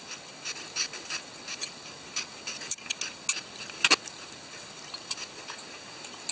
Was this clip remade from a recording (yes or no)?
no